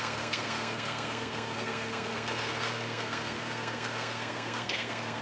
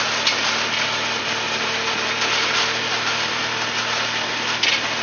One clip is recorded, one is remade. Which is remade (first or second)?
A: first